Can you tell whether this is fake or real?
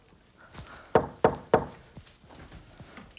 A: real